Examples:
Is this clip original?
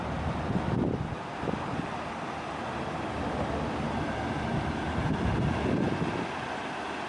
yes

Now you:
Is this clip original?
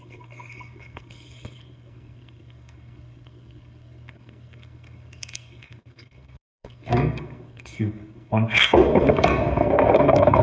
no